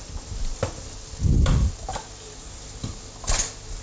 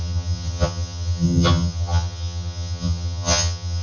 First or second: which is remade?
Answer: second